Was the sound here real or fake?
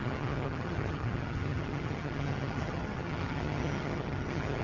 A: fake